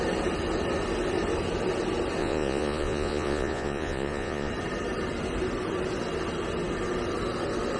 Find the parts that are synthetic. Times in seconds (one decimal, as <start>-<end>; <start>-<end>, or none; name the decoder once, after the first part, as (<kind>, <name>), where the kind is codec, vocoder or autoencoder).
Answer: 2.2-4.5 (vocoder, Vocos)